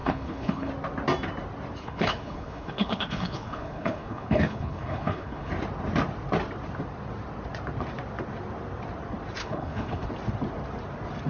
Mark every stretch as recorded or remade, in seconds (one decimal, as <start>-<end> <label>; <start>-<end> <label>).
0.0-0.7 remade; 0.7-1.8 recorded; 1.8-5.5 remade; 5.5-9.4 recorded; 9.4-10.1 remade; 10.1-11.3 recorded